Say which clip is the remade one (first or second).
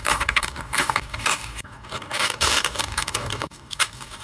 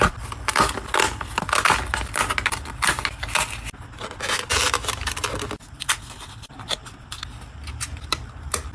first